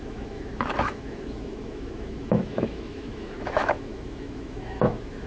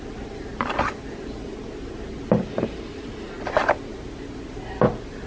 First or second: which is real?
second